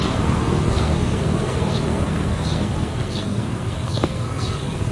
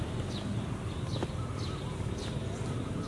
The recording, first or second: second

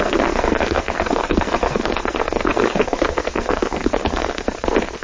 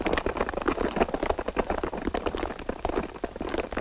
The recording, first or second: second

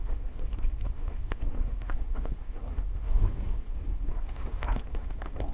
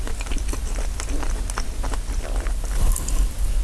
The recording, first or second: second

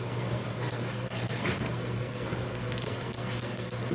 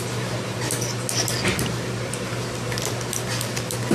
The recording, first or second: second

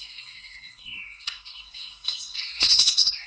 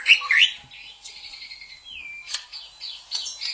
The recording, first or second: second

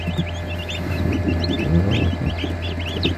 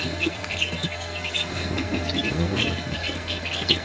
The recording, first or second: first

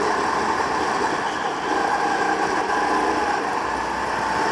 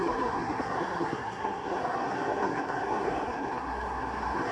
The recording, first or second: first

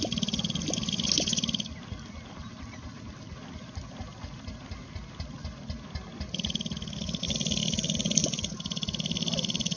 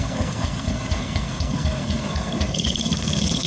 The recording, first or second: first